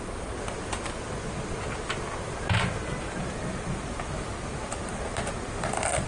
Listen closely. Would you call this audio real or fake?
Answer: real